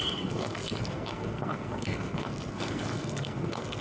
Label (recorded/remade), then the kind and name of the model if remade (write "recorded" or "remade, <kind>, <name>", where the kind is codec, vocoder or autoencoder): remade, codec, SNAC